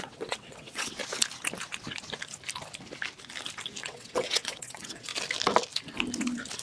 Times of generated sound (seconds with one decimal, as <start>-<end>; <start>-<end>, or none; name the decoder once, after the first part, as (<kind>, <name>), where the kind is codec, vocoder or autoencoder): 0.0-1.0 (vocoder, WaveNeXt); 3.8-5.1